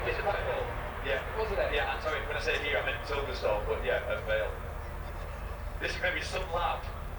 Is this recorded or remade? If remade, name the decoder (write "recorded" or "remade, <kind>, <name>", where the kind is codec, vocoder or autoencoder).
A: recorded